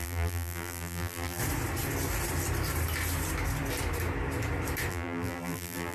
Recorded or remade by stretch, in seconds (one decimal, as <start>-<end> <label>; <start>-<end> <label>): 0.0-1.4 remade; 1.4-4.9 recorded; 4.9-5.9 remade

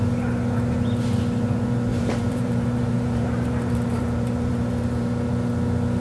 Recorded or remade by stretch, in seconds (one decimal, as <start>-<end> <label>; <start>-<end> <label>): 0.0-1.9 recorded; 1.9-5.1 remade; 5.1-6.0 recorded